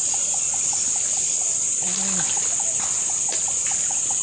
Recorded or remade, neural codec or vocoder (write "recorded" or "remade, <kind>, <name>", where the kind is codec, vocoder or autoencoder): recorded